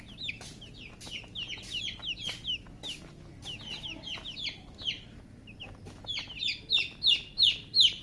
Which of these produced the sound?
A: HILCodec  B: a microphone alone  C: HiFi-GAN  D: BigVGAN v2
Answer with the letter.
B